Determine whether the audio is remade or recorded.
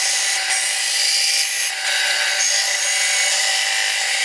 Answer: recorded